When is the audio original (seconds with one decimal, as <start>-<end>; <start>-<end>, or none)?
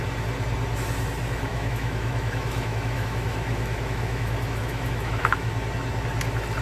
0.0-1.5; 5.5-6.6